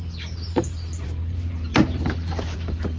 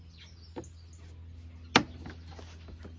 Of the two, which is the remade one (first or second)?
first